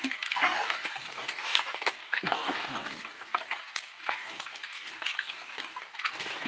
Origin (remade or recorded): remade